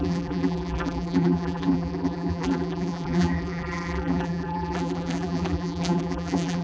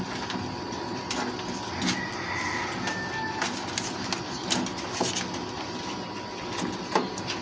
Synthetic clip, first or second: first